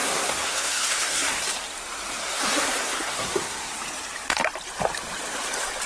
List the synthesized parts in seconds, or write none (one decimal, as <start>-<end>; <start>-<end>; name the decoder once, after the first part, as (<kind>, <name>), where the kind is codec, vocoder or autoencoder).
0.0-1.4 (codec, SNAC); 2.2-3.8